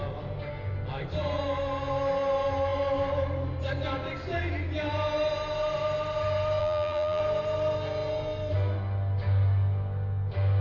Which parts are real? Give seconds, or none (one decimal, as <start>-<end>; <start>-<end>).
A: 0.0-6.6; 7.2-10.6